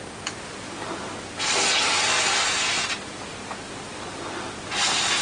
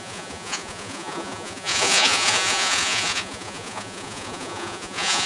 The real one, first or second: first